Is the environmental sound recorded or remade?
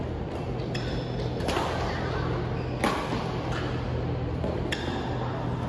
recorded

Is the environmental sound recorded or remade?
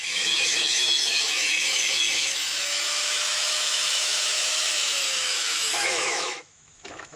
remade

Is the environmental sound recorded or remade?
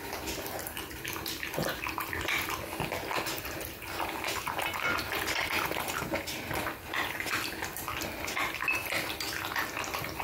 recorded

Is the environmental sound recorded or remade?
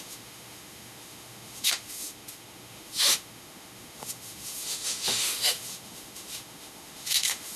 remade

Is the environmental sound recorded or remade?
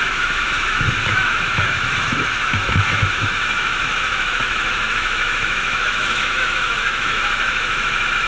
remade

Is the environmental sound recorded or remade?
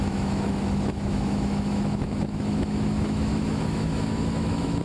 remade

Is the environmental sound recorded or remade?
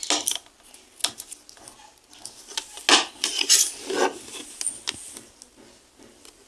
recorded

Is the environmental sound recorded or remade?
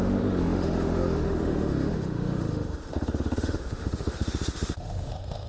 remade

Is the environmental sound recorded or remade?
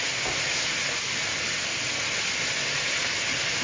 recorded